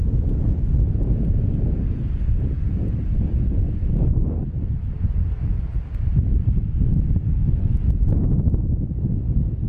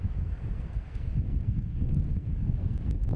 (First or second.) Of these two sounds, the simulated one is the second